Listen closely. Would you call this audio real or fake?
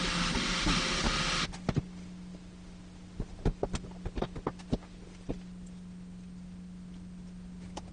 real